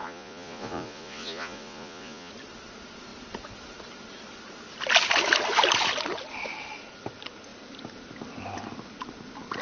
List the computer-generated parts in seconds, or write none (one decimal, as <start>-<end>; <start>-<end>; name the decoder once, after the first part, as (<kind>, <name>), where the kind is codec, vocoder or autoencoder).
0.0-2.3 (vocoder, Vocos)